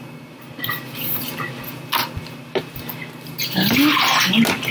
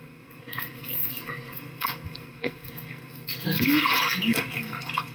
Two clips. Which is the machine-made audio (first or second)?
second